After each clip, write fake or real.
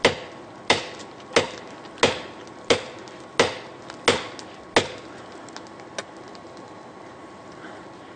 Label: real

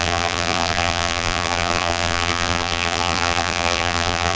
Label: fake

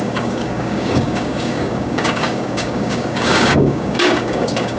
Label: fake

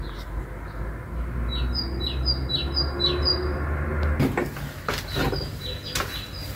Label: real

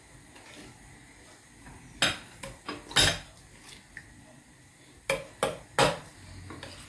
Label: real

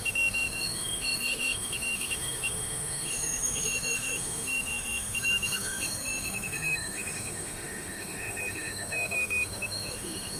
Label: fake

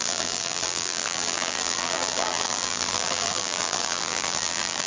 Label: fake